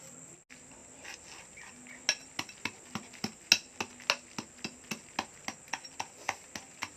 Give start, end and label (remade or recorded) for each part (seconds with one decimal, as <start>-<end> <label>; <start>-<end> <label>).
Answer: 0.0-7.0 recorded